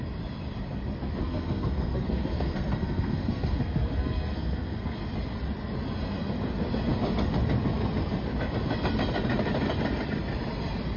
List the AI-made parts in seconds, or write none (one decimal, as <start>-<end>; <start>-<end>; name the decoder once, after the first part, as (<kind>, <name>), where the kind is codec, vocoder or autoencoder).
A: 1.2-5.0 (codec, SNAC)

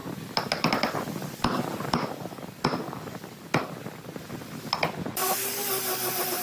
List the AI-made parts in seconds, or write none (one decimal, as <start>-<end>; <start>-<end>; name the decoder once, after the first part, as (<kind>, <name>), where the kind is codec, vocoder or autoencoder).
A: none

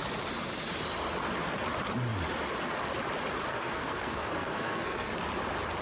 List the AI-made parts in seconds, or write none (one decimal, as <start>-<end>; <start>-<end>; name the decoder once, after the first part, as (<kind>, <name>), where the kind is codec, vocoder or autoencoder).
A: 3.5-5.1 (codec, SNAC)

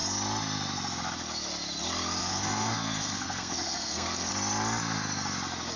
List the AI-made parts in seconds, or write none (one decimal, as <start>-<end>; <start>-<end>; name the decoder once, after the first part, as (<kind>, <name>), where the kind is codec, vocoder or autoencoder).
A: 2.2-4.3 (codec, SNAC)